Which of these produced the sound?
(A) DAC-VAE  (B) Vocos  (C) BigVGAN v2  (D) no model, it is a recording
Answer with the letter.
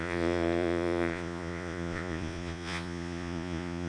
B